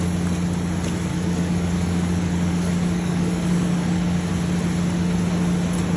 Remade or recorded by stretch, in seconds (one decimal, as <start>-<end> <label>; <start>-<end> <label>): 0.0-1.1 recorded; 1.1-4.3 remade; 4.3-6.0 recorded